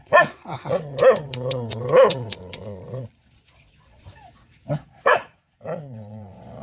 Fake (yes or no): yes